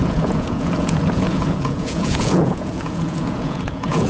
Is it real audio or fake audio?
fake